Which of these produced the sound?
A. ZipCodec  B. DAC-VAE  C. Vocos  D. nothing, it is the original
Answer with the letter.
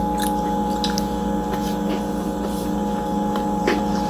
D